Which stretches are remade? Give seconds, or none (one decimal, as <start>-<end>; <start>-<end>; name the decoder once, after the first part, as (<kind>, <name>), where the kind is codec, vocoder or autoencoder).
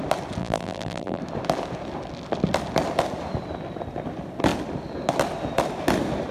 0.4-1.2 (vocoder, BigVGAN v2)